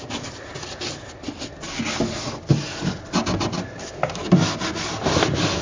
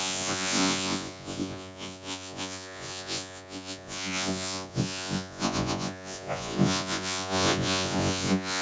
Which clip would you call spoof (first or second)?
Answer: second